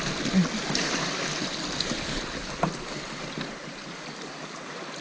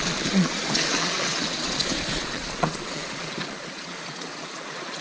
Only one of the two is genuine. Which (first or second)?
first